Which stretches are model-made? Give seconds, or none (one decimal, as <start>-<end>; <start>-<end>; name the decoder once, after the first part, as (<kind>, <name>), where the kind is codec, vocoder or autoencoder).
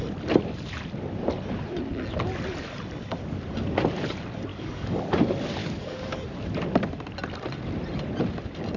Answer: 4.5-5.0 (codec, DAC); 5.6-6.2